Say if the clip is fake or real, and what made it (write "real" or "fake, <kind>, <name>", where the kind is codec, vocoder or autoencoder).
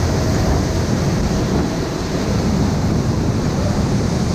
fake, vocoder, BigVGAN v2